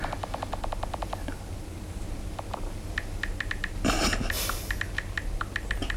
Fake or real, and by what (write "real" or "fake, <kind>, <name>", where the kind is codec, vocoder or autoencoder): real